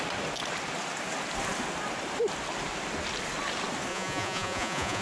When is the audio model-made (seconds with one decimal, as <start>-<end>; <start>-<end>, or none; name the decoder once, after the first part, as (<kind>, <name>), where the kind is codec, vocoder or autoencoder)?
3.9-5.0 (vocoder, Vocos)